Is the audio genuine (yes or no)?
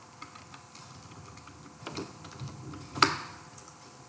yes